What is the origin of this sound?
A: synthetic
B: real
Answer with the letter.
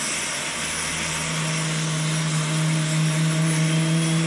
B